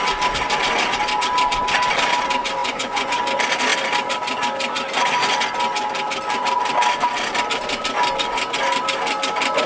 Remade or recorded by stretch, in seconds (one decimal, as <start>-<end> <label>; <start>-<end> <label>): 0.0-2.6 recorded; 2.6-3.2 remade; 3.2-9.7 recorded